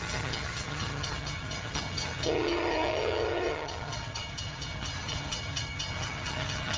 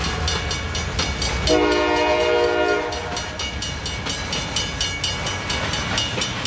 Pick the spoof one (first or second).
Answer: first